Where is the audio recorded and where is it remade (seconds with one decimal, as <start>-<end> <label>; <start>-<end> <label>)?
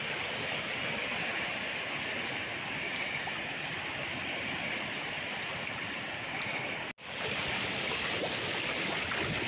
0.0-9.5 recorded